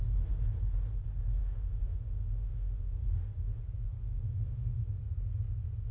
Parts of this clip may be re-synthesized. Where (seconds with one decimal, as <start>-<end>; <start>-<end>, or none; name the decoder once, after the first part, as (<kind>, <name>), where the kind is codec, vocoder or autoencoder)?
1.4-3.6 (autoencoder, DAC-VAE); 4.0-5.0